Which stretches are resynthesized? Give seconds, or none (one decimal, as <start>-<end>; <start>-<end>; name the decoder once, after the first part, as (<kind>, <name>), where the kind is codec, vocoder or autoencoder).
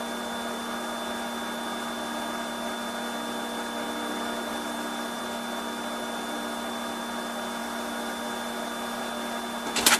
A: 4.5-5.2 (vocoder, BigVGAN v2); 7.6-9.0